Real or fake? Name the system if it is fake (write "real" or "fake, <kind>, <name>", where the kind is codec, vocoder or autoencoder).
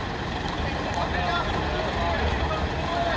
real